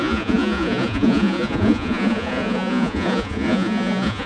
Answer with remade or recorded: remade